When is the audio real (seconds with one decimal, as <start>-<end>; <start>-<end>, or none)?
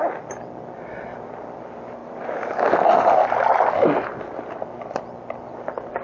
0.0-6.0